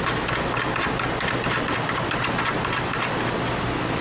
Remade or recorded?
recorded